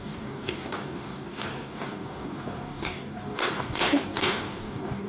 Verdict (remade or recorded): remade